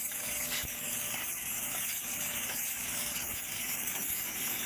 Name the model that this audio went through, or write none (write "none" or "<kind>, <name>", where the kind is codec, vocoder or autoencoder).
codec, DAC